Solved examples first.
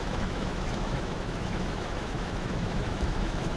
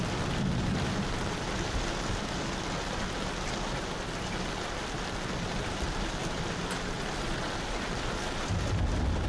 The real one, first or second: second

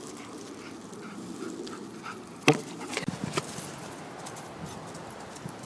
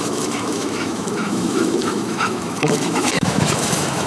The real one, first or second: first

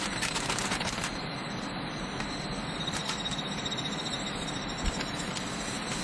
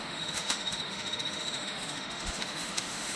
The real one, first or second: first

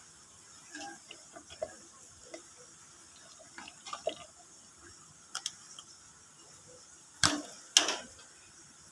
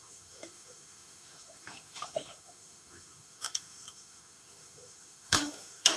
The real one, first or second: first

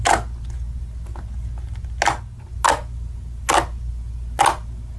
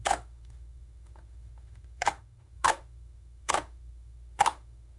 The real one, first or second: first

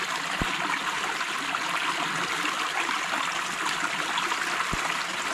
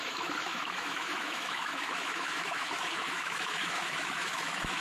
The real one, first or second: first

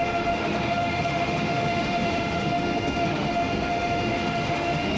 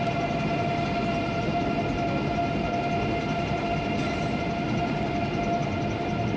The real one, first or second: second